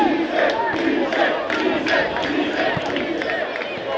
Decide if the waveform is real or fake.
real